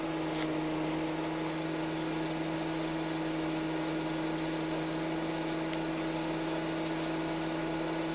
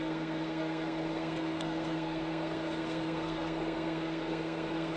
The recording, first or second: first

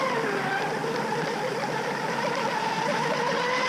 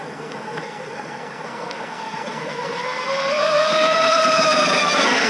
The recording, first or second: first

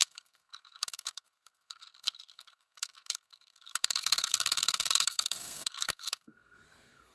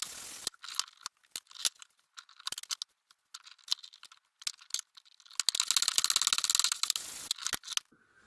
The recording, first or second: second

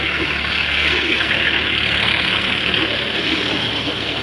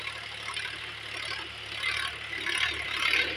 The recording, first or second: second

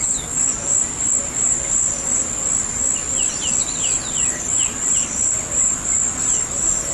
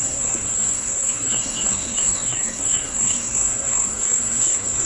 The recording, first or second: first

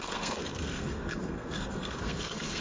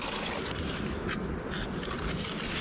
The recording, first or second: second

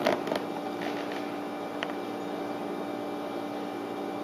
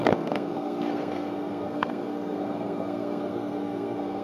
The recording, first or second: first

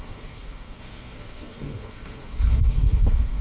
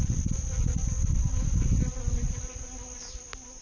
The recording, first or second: second